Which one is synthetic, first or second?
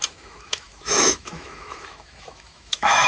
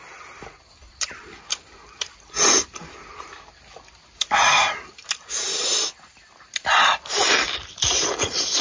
first